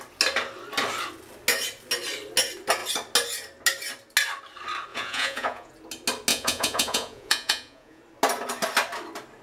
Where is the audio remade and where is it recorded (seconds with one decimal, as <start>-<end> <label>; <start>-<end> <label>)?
0.0-4.9 recorded; 4.9-5.7 remade; 5.7-6.3 recorded; 6.3-8.0 remade; 8.0-9.4 recorded